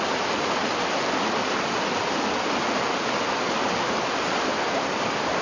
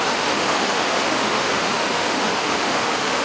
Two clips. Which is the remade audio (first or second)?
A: second